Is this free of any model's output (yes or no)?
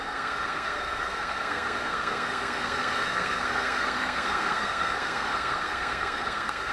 no